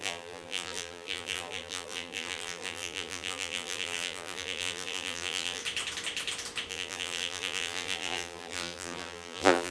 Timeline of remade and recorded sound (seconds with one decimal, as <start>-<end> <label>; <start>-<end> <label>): 0.0-5.6 remade; 5.6-6.7 recorded; 6.7-9.7 remade